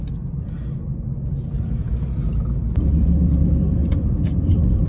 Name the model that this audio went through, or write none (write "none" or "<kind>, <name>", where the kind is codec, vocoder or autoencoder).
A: none